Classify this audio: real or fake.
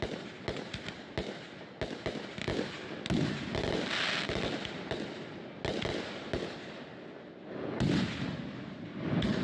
real